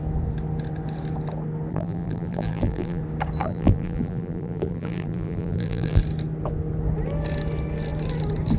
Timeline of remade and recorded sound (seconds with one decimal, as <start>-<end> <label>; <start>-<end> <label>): 0.0-1.7 recorded; 1.7-3.0 remade; 3.0-3.4 recorded; 3.4-6.0 remade; 6.0-8.6 recorded